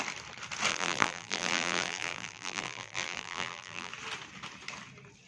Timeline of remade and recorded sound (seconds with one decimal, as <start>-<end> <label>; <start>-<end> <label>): 0.0-0.7 recorded; 0.7-3.9 remade; 3.9-5.3 recorded